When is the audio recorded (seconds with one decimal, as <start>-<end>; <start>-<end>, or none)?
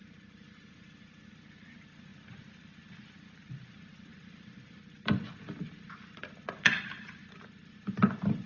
1.3-8.5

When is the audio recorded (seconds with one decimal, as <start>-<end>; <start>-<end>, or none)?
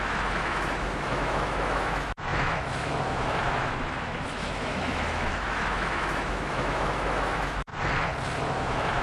7.7-8.4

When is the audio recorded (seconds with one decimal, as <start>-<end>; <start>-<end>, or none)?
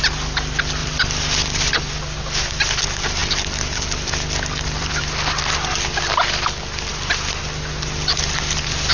0.0-0.8; 1.9-3.2; 5.0-6.9; 7.4-8.9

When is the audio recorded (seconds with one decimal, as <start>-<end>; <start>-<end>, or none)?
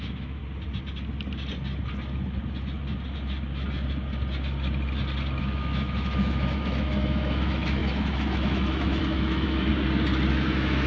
0.4-5.4; 9.7-10.3